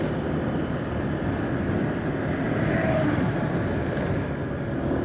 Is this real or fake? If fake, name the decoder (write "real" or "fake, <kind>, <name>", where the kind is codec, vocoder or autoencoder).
real